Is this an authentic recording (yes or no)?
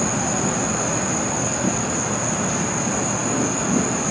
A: yes